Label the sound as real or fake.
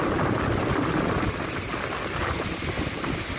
real